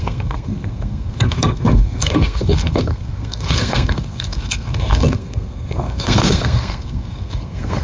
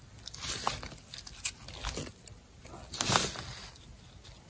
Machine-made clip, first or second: first